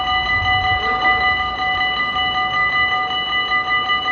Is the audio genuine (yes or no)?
yes